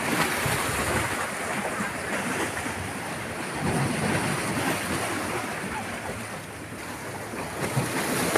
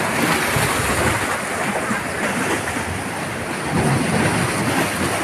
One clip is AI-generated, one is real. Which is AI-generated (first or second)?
first